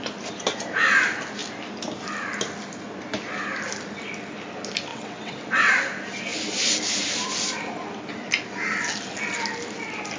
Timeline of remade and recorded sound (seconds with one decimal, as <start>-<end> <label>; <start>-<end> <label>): 0.0-4.9 recorded; 4.9-5.7 remade; 5.7-10.2 recorded

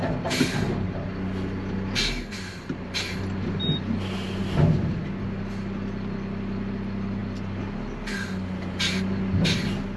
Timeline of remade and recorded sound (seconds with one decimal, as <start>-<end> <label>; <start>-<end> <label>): 0.0-10.0 recorded

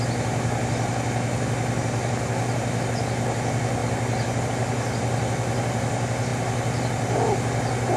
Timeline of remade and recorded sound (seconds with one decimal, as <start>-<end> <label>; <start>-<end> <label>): 0.0-8.0 recorded

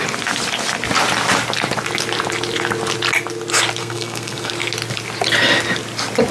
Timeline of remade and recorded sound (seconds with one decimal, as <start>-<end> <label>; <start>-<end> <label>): 0.0-3.8 recorded; 3.8-4.5 remade; 4.5-6.3 recorded

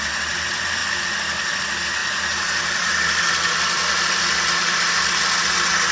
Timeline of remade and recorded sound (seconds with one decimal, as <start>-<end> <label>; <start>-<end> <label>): 0.0-5.9 recorded

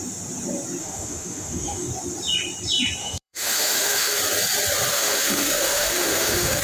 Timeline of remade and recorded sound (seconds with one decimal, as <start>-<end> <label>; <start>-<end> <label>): 0.0-0.8 recorded; 0.8-1.9 remade; 1.9-3.0 recorded; 3.0-4.2 remade; 4.2-4.9 recorded; 4.9-6.6 remade

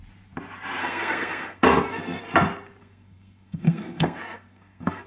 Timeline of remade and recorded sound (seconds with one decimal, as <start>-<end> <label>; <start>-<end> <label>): 0.0-0.8 recorded; 0.8-2.2 remade; 2.2-2.8 recorded; 2.8-5.1 remade